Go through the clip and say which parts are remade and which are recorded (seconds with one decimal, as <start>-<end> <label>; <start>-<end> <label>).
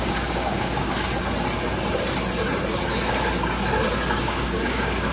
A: 0.0-1.1 remade; 1.1-4.2 recorded; 4.2-5.1 remade